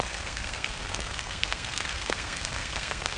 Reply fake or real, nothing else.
fake